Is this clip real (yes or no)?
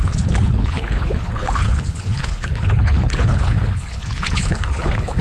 no